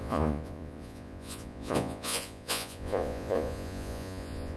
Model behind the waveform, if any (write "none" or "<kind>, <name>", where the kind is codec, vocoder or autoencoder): vocoder, Vocos